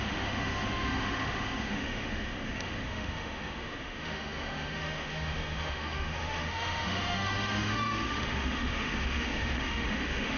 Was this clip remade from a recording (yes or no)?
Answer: yes